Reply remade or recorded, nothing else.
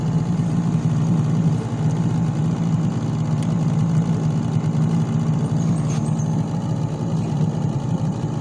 recorded